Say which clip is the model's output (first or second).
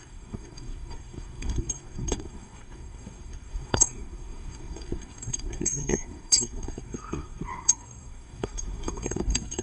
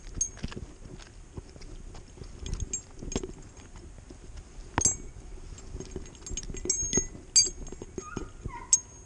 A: first